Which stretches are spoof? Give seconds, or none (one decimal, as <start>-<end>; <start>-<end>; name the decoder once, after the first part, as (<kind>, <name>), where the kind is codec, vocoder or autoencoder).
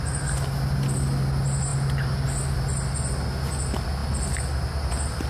none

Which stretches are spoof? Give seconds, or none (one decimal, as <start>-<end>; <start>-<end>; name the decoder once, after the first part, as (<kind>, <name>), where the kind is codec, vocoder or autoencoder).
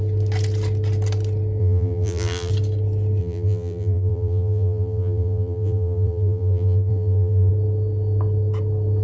1.6-2.5 (vocoder, BigVGAN v2); 3.2-7.5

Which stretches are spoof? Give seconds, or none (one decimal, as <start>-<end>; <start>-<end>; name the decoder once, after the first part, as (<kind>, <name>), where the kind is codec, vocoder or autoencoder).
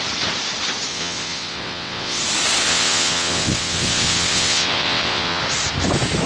0.9-2.2 (vocoder, WaveNeXt); 2.7-5.4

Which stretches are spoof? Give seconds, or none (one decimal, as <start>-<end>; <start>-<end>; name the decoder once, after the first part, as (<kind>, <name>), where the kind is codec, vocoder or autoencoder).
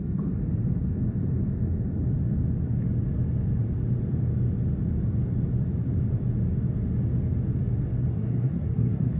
8.1-9.2 (codec, SNAC)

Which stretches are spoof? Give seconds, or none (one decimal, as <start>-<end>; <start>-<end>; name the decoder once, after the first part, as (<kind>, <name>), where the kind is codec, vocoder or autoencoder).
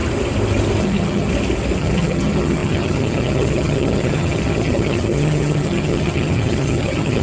0.8-1.3 (vocoder, HiFi-GAN); 1.8-7.2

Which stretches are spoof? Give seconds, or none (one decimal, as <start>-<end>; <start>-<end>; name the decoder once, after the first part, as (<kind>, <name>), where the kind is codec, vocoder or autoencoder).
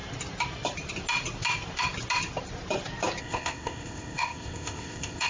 3.2-5.3 (codec, ZipCodec)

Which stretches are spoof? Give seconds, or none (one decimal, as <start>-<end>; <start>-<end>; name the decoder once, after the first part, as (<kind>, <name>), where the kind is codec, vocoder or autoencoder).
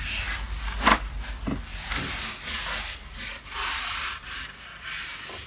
1.7-5.0 (vocoder, BigVGAN v2)